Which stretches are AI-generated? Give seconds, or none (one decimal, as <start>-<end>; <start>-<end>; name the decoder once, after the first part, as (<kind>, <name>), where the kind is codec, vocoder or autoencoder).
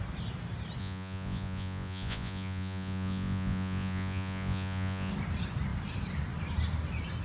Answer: 0.8-5.1 (vocoder, Vocos)